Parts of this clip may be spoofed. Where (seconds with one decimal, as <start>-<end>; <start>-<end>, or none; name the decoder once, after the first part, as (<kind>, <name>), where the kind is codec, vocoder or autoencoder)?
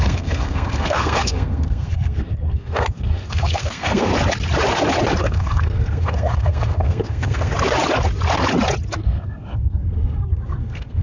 0.0-4.1 (codec, SNAC); 5.2-7.5; 9.0-11.0